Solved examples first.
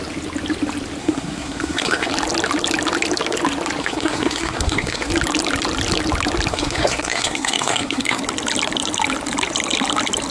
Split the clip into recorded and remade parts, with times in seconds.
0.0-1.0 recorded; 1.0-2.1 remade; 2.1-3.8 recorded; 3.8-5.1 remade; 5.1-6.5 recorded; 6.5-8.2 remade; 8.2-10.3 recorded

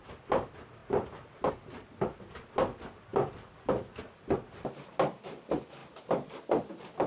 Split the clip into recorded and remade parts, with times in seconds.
0.0-0.8 recorded; 0.8-1.5 remade; 1.5-5.8 recorded; 5.8-6.4 remade; 6.4-7.1 recorded

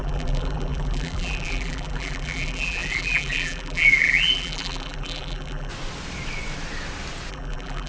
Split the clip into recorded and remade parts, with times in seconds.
0.0-5.7 remade; 5.7-7.3 recorded; 7.3-7.9 remade

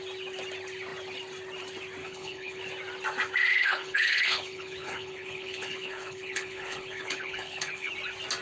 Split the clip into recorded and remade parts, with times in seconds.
0.0-2.0 recorded; 2.0-2.6 remade; 2.6-3.5 recorded; 3.5-7.9 remade; 7.9-8.4 recorded

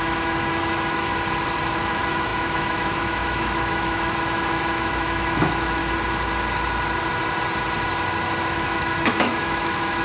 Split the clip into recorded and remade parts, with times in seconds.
0.0-1.1 remade; 1.1-1.7 recorded; 1.7-5.8 remade; 5.8-8.4 recorded; 8.4-10.0 remade

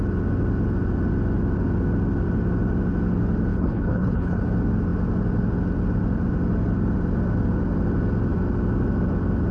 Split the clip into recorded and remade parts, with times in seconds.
0.0-3.5 recorded; 3.5-4.4 remade; 4.4-9.5 recorded